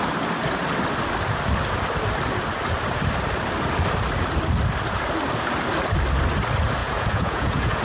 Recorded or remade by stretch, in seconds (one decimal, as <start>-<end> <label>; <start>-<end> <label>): 0.0-6.8 recorded; 6.8-7.8 remade